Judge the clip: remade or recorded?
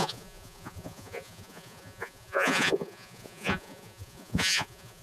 remade